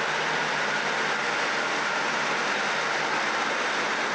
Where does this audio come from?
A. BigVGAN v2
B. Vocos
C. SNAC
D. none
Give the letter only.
D